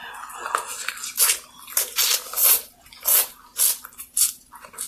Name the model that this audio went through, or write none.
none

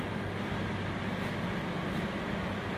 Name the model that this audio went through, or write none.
none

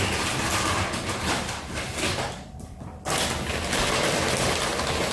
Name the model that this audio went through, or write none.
none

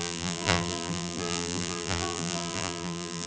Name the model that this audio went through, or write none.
vocoder, BigVGAN v2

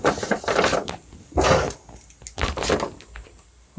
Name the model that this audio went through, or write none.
none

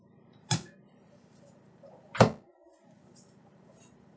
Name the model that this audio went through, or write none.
vocoder, BigVGAN v2